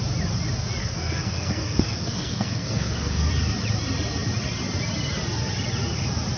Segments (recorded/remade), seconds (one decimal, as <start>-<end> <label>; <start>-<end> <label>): 0.0-0.8 recorded; 0.8-3.3 remade; 3.3-6.4 recorded